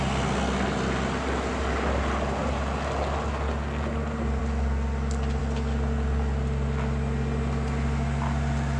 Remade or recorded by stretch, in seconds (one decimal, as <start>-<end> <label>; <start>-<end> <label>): 0.0-8.8 recorded